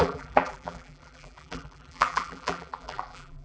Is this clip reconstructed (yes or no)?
yes